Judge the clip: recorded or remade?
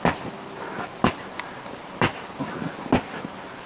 recorded